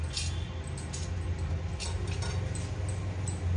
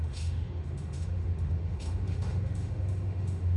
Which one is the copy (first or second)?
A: second